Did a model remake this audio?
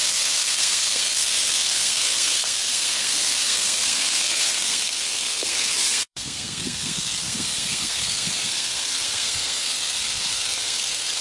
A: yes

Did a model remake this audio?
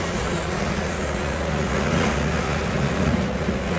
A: yes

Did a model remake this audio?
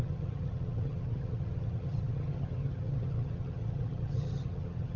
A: yes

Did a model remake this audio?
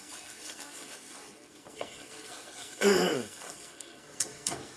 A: yes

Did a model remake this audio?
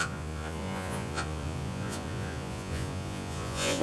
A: yes